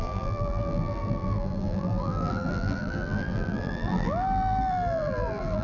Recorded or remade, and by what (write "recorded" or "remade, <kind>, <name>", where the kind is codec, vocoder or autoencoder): remade, vocoder, BigVGAN v2